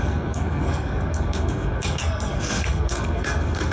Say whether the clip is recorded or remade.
remade